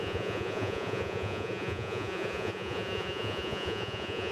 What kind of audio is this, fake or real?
fake